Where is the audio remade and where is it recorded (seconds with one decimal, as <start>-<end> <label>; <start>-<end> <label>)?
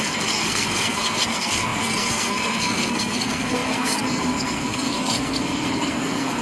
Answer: 0.0-6.4 remade